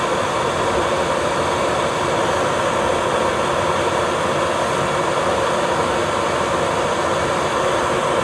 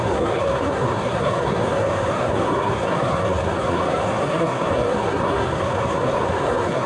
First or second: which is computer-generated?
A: second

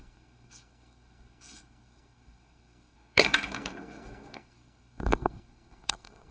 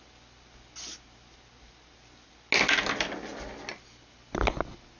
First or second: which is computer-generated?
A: first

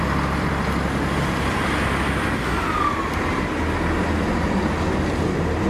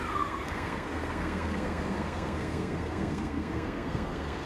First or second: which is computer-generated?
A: second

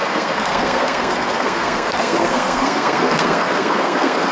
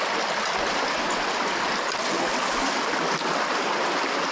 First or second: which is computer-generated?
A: first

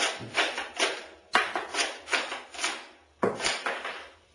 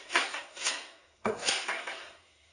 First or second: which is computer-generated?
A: second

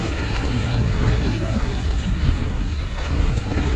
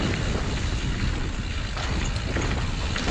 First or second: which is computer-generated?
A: first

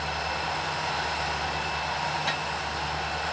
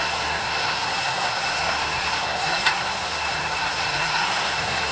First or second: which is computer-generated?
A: second